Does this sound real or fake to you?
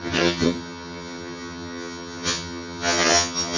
fake